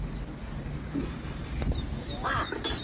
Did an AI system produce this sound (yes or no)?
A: no